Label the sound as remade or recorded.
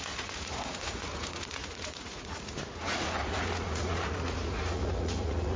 remade